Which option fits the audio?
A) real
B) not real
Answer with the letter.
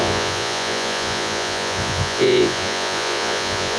B